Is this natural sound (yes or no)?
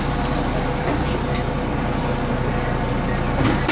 yes